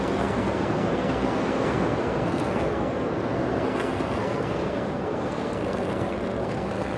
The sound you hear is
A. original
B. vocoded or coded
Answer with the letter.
B